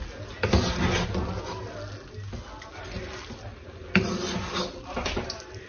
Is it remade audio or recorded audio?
recorded